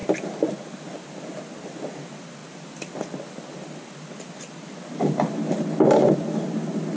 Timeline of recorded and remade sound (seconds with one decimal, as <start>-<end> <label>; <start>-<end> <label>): 0.0-7.0 recorded